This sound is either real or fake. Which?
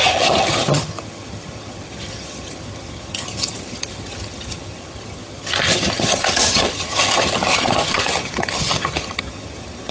fake